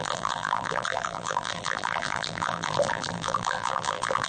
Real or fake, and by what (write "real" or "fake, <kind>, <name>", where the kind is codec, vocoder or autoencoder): fake, vocoder, BigVGAN v2